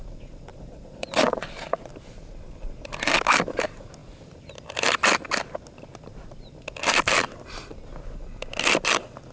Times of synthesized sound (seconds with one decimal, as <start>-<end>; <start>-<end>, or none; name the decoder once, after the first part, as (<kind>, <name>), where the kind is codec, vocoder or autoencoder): 0.5-1.9 (vocoder, Vocos)